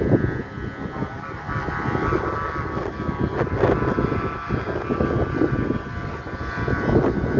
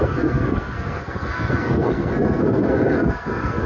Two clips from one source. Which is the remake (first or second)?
second